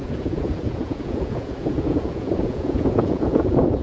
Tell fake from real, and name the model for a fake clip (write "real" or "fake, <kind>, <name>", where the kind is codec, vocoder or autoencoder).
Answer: fake, vocoder, Vocos